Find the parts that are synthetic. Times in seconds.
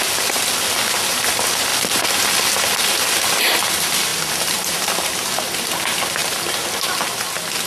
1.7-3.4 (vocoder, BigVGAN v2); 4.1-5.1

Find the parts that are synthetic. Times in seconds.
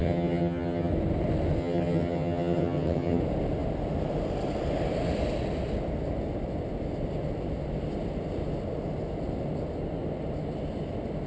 0.0-0.9 (vocoder, HiFi-GAN); 1.6-3.2